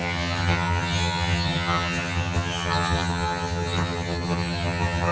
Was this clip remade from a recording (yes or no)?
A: yes